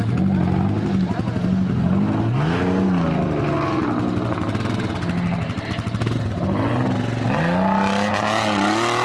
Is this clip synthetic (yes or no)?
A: no